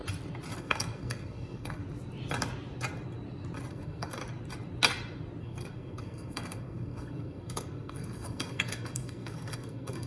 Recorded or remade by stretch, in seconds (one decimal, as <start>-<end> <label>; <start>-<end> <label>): 0.0-0.6 recorded; 0.6-1.8 remade; 1.8-3.7 recorded; 3.7-4.2 remade; 4.2-5.4 recorded; 5.4-10.1 remade